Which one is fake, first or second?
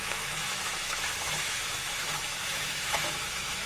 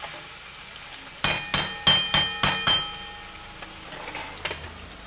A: first